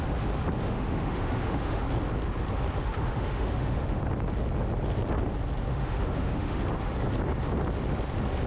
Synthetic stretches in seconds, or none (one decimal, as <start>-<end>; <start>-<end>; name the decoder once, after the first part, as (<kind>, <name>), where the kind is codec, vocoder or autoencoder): 0.6-1.8 (autoencoder, DAC-VAE); 2.8-4.0; 5.7-6.6